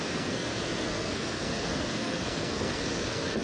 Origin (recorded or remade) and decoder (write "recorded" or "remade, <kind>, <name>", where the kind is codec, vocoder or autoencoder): remade, codec, SNAC